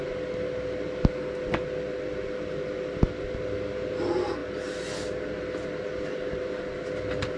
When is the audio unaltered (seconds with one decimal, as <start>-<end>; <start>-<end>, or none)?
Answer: 0.0-7.4

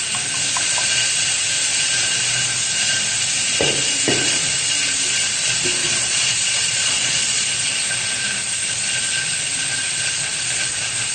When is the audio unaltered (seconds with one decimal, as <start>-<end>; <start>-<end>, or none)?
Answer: 0.0-5.8; 7.5-11.1

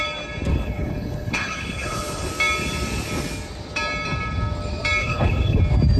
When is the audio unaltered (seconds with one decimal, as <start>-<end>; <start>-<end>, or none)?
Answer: 0.0-0.5; 2.3-5.0; 5.6-6.0